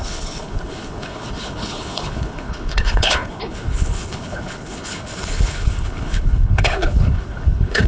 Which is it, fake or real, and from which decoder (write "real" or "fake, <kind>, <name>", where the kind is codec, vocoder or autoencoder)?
fake, codec, HILCodec